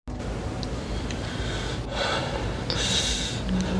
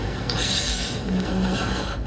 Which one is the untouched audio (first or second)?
first